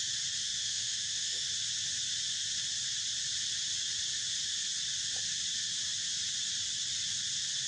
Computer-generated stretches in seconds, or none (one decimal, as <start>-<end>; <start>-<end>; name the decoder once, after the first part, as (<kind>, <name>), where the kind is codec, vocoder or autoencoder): 0.4-1.5 (autoencoder, DAC-VAE)